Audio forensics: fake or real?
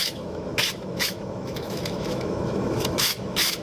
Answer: fake